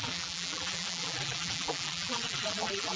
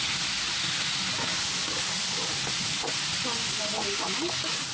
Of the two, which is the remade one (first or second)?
first